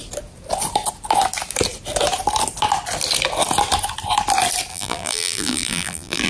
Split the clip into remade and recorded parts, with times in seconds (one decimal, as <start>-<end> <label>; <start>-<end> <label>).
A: 0.0-4.7 recorded; 4.7-6.3 remade